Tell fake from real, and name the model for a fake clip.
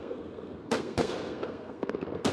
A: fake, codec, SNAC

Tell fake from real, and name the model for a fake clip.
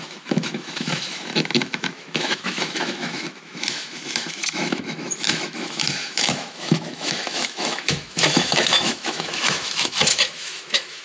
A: fake, autoencoder, DAC-VAE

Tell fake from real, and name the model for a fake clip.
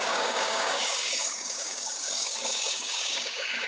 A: fake, codec, DAC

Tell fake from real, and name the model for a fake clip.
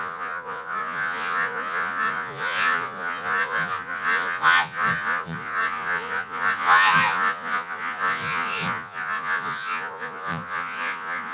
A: fake, vocoder, Vocos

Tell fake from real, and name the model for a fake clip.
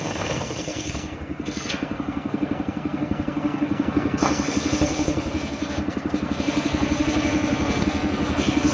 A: fake, codec, SNAC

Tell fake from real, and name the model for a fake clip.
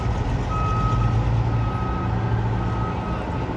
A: real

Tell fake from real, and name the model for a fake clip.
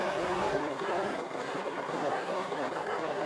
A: fake, codec, SNAC